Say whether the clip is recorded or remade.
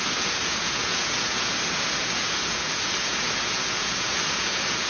remade